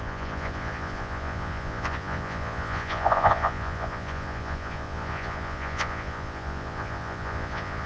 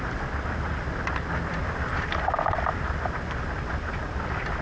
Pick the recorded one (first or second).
second